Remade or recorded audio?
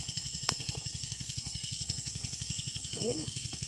remade